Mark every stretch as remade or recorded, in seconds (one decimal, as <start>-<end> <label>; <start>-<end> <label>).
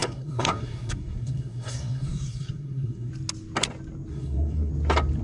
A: 0.0-3.1 remade; 3.1-4.1 recorded; 4.1-4.7 remade; 4.7-5.2 recorded